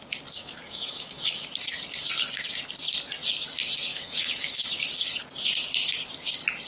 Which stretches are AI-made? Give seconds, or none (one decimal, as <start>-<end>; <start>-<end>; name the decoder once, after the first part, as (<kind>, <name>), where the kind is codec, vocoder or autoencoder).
0.4-1.5 (autoencoder, DAC-VAE); 3.9-4.9